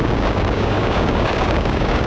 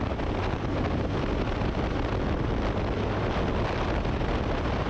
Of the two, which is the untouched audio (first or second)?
second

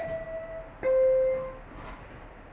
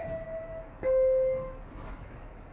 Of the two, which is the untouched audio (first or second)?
first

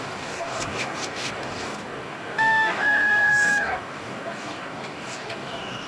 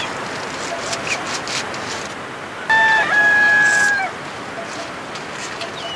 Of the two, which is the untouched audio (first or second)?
second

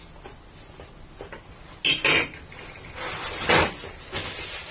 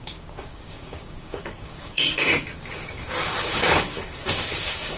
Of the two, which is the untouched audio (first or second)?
first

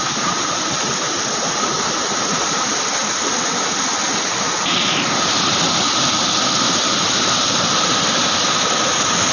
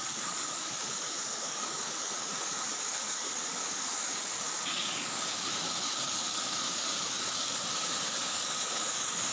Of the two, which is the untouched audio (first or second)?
first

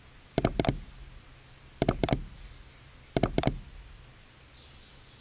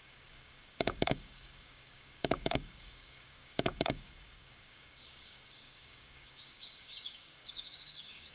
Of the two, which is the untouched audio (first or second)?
first